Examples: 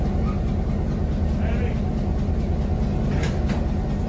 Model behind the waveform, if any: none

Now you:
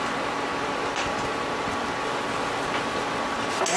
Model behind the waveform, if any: none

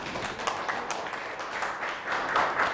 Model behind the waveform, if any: none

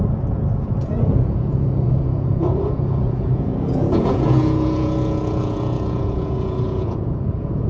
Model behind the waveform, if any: vocoder, Vocos